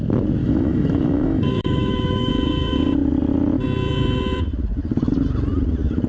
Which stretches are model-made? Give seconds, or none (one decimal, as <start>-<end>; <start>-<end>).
0.4-2.3